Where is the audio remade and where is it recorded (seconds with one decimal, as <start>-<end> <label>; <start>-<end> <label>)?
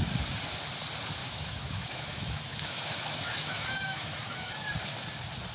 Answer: 0.0-1.2 recorded; 1.2-4.5 remade; 4.5-5.5 recorded